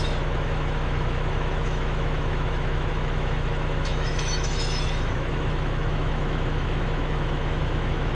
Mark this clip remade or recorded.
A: remade